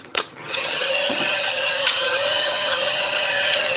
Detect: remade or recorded remade